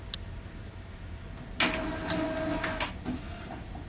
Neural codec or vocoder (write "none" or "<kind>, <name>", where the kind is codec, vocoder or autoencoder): none